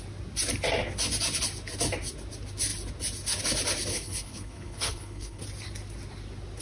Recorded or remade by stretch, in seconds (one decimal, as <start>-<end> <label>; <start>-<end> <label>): 0.0-3.9 recorded; 3.9-5.4 remade; 5.4-6.6 recorded